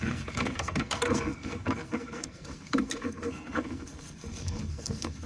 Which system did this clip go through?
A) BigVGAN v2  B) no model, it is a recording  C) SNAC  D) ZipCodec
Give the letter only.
C